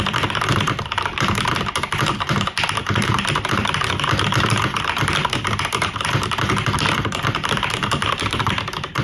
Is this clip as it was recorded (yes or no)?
no